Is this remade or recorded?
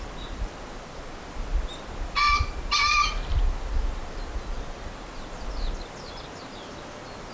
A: recorded